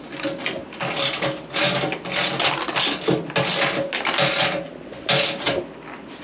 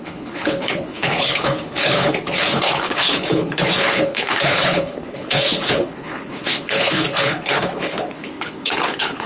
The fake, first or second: second